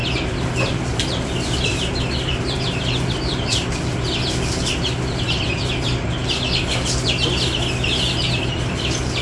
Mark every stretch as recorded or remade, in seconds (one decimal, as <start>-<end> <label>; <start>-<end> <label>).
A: 0.0-6.2 remade; 6.2-8.5 recorded; 8.5-9.2 remade